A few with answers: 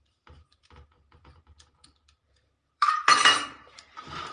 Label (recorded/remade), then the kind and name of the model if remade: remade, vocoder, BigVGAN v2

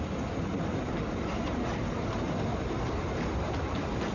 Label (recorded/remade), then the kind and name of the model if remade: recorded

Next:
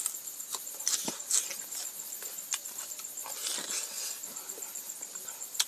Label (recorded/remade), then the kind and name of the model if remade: recorded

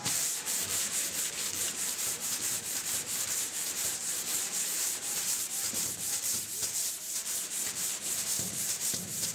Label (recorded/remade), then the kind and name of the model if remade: remade, vocoder, BigVGAN v2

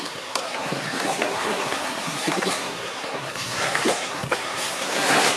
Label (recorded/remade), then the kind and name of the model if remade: remade, codec, SNAC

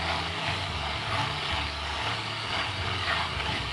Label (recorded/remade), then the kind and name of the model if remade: remade, codec, DAC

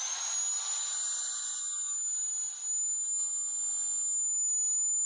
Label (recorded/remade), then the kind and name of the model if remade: recorded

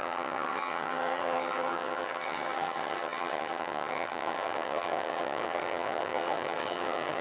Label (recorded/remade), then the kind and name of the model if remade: remade, vocoder, HiFi-GAN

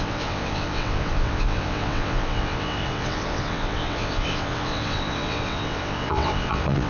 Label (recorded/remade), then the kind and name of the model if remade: remade, vocoder, WaveNeXt